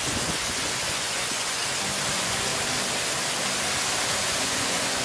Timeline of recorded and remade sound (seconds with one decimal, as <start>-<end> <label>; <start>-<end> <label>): 0.0-1.6 remade; 1.6-2.1 recorded; 2.1-2.5 remade; 2.5-4.2 recorded; 4.2-5.0 remade